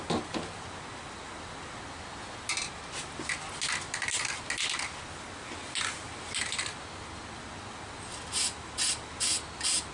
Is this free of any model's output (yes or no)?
yes